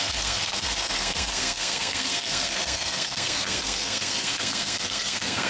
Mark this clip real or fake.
fake